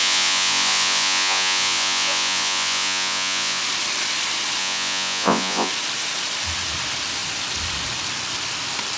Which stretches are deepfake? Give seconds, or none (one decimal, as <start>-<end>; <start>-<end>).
0.0-3.6; 4.6-5.7